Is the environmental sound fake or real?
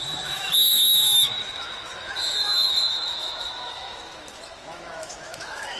fake